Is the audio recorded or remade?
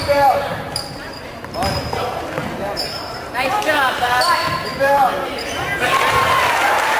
remade